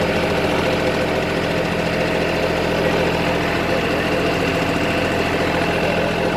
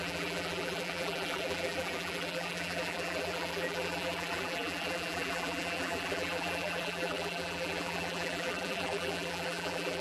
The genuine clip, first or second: first